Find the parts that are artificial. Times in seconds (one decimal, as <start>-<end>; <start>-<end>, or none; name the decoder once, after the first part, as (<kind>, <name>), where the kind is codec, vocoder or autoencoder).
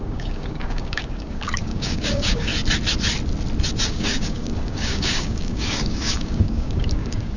0.0-2.5 (codec, DAC); 3.9-7.4